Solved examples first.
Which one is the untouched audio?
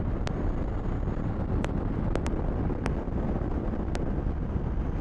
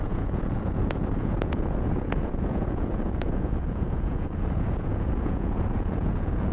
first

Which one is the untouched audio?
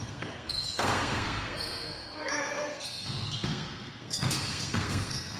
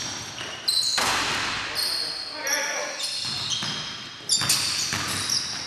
second